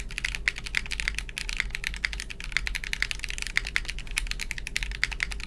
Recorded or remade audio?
recorded